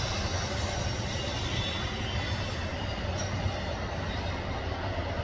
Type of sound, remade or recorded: recorded